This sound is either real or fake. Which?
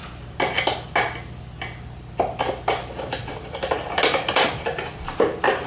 real